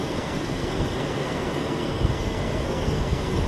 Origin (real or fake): fake